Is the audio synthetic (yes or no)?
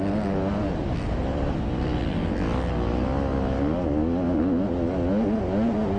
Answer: no